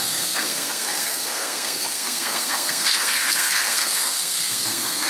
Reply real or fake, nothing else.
fake